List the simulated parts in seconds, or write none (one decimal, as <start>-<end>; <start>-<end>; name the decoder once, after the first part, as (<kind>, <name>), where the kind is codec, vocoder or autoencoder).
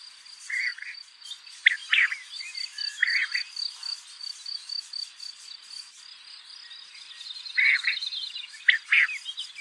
0.7-1.2 (vocoder, BigVGAN v2)